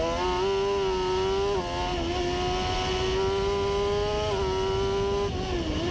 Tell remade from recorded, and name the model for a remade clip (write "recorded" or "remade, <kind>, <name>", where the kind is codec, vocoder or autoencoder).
recorded